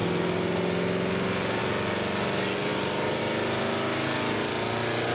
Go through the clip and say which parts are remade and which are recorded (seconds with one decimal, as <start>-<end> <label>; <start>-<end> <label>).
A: 0.0-2.7 recorded; 2.7-3.2 remade; 3.2-5.1 recorded